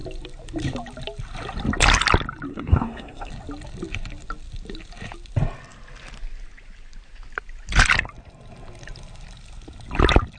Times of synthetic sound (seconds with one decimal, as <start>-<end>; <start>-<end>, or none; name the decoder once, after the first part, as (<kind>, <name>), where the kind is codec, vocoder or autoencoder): 2.5-3.3 (codec, SNAC)